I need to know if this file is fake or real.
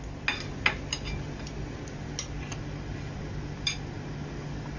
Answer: real